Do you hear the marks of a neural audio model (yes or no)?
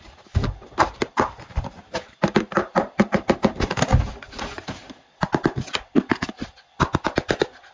no